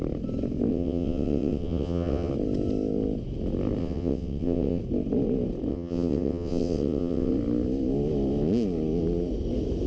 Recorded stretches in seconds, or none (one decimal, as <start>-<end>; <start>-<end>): 0.0-0.7; 2.3-3.8; 4.8-5.7; 7.3-9.9